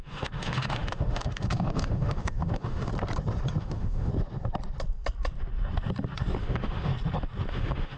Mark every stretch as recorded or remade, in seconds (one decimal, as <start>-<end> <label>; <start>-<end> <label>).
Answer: 0.0-2.9 remade; 2.9-3.6 recorded; 3.6-4.1 remade; 4.1-6.4 recorded; 6.4-6.9 remade; 6.9-7.5 recorded; 7.5-8.0 remade